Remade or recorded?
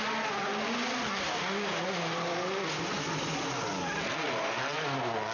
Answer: recorded